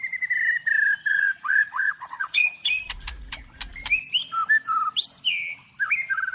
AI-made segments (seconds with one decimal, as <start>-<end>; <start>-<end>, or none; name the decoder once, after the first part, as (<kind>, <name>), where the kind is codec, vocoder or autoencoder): 1.1-3.6 (vocoder, Vocos)